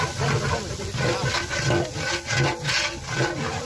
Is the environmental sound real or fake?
real